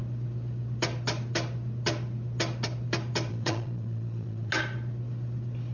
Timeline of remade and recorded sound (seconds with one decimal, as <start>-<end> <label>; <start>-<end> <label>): 0.0-3.3 recorded; 3.3-4.5 remade; 4.5-5.7 recorded